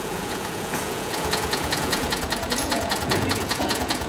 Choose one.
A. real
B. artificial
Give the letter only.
B